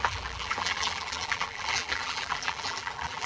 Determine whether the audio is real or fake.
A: fake